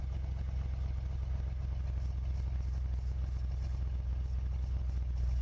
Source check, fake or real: real